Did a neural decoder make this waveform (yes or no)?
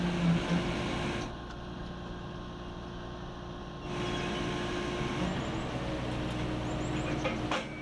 no